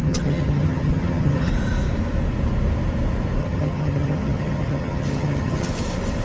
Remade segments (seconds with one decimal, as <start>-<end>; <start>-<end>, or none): 0.0-1.5; 3.4-5.7